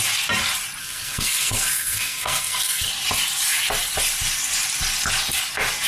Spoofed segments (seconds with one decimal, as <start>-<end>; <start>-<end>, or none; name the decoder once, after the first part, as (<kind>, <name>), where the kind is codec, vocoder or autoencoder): 0.8-2.9 (codec, SNAC)